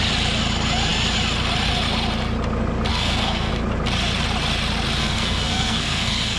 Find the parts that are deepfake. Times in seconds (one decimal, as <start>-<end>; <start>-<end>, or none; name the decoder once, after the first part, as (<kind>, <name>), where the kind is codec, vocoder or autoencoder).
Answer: 2.9-3.5 (codec, SNAC); 5.0-6.4